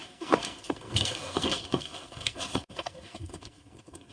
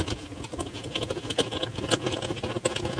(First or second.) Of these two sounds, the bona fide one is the second